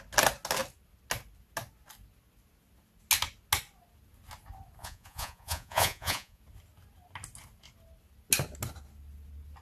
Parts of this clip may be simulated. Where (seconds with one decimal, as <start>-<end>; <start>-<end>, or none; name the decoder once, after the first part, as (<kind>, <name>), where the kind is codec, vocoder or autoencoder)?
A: 4.8-6.4 (vocoder, Vocos)